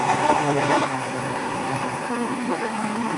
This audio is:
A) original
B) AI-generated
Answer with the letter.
B